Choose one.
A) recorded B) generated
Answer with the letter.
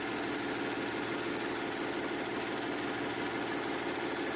A